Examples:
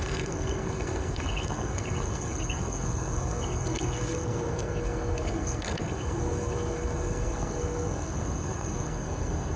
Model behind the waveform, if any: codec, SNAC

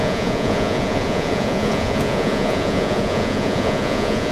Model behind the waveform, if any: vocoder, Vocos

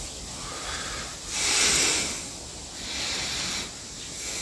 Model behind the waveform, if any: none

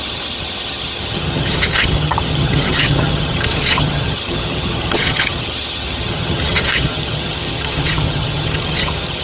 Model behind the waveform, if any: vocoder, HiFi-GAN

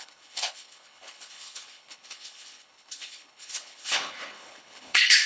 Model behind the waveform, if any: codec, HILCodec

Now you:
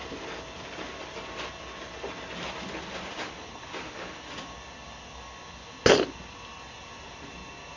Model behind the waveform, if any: none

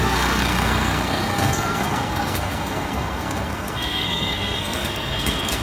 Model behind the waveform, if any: codec, SNAC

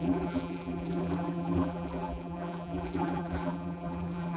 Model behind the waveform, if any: vocoder, BigVGAN v2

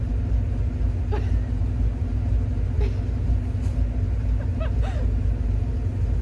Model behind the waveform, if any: none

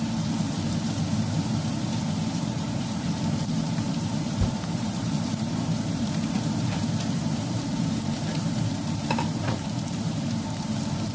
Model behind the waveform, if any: vocoder, BigVGAN v2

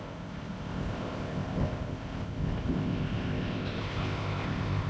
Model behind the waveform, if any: codec, ZipCodec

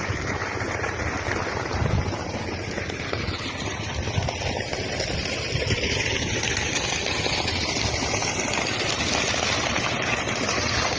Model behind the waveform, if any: none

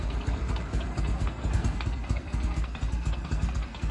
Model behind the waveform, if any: codec, SNAC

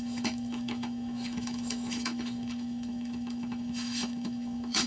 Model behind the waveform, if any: autoencoder, DAC-VAE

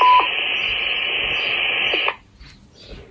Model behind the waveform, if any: none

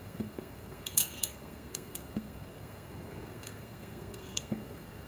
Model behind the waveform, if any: codec, SNAC